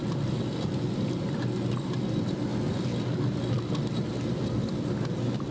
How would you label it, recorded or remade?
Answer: recorded